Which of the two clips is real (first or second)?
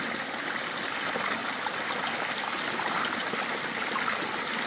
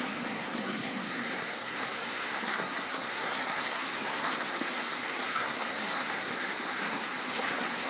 first